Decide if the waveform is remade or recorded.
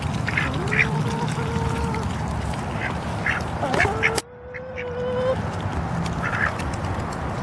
recorded